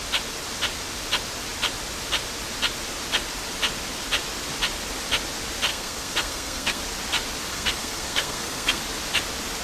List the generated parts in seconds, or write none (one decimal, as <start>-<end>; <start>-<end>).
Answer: 5.7-6.8; 7.5-8.8